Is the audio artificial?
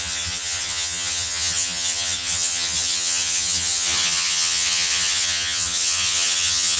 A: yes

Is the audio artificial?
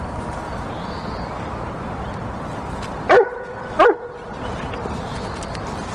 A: no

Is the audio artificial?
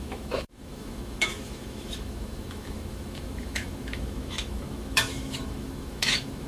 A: yes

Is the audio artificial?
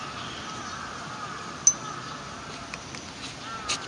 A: no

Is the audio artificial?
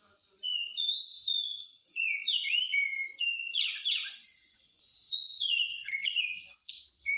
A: yes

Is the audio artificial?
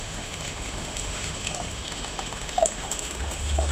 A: yes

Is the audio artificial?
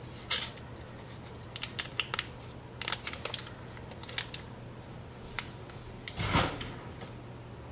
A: no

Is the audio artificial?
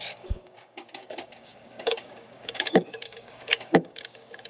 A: yes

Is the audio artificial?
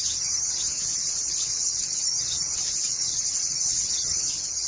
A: yes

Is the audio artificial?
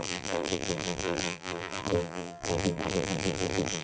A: yes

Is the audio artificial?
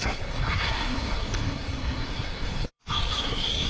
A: yes